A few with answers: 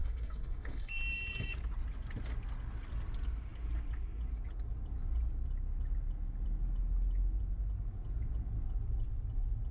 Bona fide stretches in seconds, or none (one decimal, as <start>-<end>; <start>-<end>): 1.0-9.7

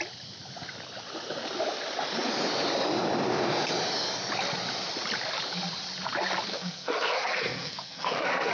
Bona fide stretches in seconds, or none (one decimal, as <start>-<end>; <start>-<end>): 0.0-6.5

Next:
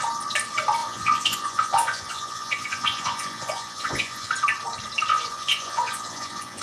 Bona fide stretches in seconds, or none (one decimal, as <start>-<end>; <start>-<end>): 0.0-0.8; 4.3-5.1

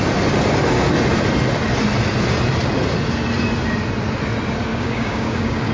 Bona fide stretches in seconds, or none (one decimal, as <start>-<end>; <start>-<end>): 0.0-4.7

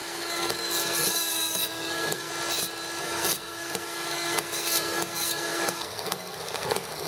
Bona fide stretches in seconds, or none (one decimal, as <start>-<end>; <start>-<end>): 2.3-3.0

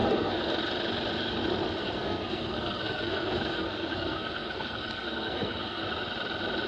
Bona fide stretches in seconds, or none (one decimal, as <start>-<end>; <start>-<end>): 0.5-1.8; 5.8-6.7

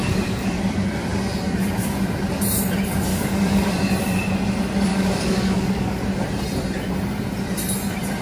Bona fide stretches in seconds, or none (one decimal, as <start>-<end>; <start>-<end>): 0.6-3.1; 3.7-4.9; 6.0-8.2